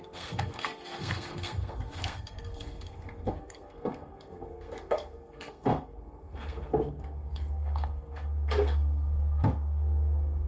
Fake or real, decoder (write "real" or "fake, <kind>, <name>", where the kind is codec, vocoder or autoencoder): fake, codec, SNAC